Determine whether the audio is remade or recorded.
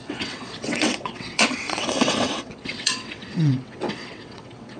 remade